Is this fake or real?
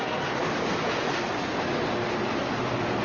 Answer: real